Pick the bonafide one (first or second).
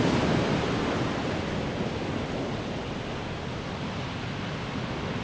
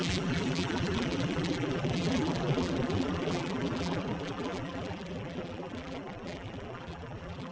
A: first